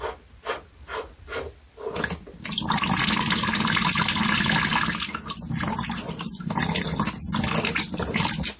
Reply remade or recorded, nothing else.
recorded